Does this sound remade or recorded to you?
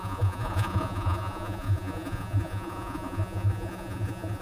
remade